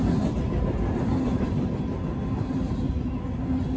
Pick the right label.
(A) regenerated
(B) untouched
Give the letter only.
B